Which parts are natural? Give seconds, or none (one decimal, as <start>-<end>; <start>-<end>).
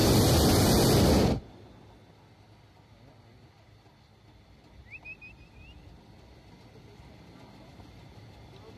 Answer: 0.0-8.8